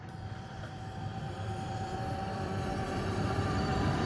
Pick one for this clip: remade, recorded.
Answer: remade